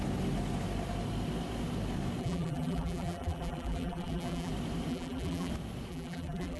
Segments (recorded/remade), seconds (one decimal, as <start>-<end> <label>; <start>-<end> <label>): 0.0-2.2 recorded; 2.2-4.5 remade; 4.5-4.9 recorded; 4.9-5.5 remade; 5.5-5.9 recorded; 5.9-6.6 remade